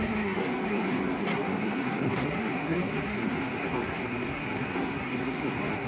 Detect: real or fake fake